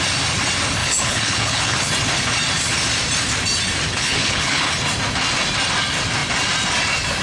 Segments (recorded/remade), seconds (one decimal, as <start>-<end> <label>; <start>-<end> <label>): 0.0-0.8 recorded; 0.8-1.9 remade; 1.9-3.9 recorded; 3.9-4.8 remade; 4.8-7.2 recorded